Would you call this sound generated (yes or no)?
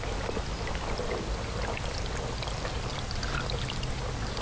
no